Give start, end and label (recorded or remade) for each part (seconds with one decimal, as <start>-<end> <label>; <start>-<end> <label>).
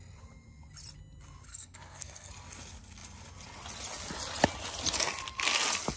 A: 0.0-1.5 recorded; 1.5-2.3 remade; 2.3-6.0 recorded